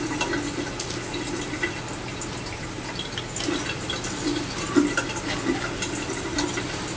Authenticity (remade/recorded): recorded